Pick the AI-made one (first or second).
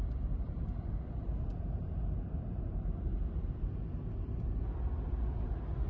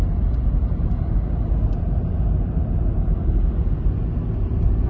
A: first